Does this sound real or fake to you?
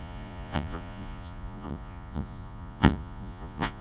fake